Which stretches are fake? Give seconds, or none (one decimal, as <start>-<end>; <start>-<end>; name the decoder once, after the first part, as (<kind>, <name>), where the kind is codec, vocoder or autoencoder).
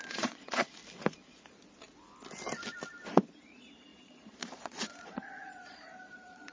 0.0-0.8 (vocoder, Vocos); 3.1-6.5